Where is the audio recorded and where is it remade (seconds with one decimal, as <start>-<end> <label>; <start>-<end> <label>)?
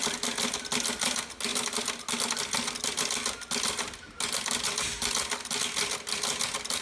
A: 0.0-6.8 recorded